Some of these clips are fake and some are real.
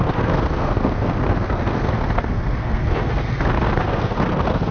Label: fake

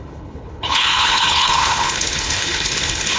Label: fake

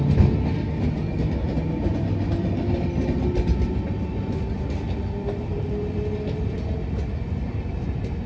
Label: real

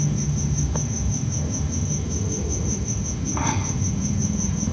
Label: fake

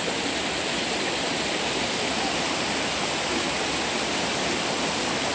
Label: real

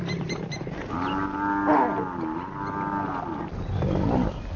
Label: real